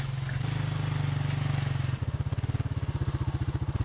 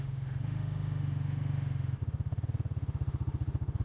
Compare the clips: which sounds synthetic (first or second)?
second